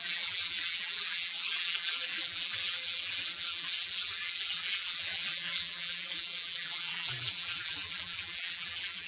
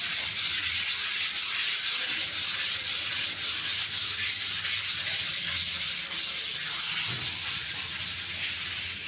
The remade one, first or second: first